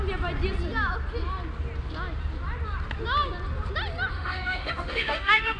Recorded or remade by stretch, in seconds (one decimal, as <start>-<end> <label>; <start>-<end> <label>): 0.0-4.1 recorded; 4.1-5.6 remade